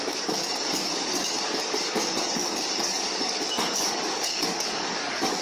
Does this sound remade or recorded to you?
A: remade